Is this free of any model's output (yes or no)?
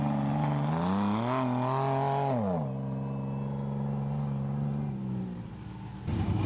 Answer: yes